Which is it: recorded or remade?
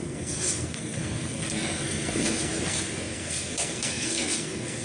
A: remade